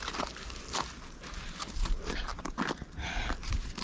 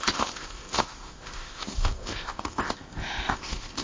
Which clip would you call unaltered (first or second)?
first